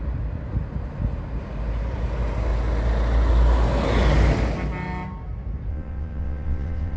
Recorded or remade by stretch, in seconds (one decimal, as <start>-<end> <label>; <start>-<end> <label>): 0.0-5.7 recorded; 5.7-7.0 remade